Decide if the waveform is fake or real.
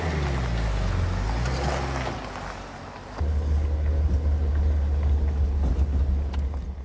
real